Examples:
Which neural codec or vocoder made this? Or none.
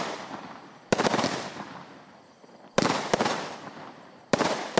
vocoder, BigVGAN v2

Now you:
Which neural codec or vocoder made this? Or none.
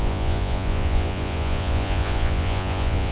vocoder, Vocos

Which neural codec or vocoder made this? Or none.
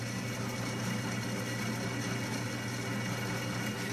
none